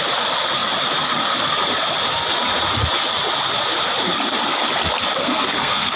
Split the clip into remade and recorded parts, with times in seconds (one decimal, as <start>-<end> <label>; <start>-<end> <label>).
0.0-5.2 recorded; 5.2-6.0 remade